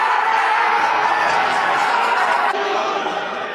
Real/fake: fake